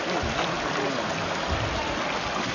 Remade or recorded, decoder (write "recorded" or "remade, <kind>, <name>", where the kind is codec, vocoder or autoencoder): recorded